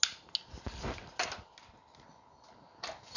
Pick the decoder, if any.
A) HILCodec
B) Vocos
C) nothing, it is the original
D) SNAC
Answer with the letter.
C